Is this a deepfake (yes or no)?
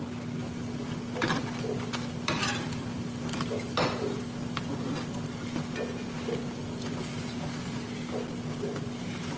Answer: no